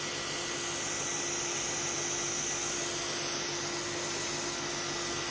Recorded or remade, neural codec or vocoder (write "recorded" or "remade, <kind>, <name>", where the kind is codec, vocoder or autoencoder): recorded